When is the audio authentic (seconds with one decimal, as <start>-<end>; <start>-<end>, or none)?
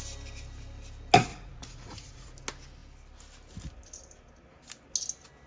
0.0-1.3; 2.3-5.5